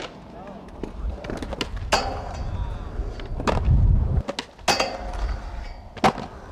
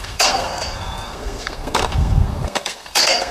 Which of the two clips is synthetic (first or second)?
second